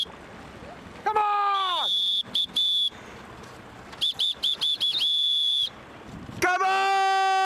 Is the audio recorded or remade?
recorded